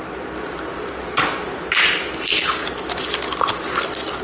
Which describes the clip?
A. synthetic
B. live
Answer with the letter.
B